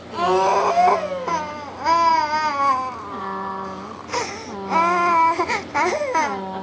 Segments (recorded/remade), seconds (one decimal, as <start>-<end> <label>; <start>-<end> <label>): 0.0-6.6 recorded